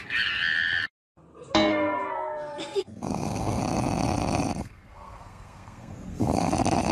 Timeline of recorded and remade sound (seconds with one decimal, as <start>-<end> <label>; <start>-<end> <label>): 0.0-1.7 recorded; 1.7-3.6 remade; 3.6-4.6 recorded; 4.6-6.5 remade; 6.5-6.9 recorded